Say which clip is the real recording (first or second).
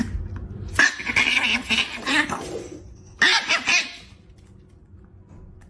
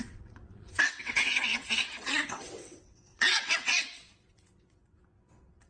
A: first